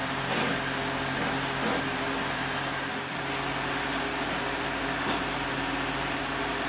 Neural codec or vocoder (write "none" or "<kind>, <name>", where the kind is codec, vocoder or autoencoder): none